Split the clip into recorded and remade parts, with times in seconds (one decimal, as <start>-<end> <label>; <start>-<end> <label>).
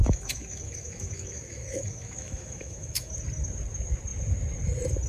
0.0-3.1 remade; 3.1-5.1 recorded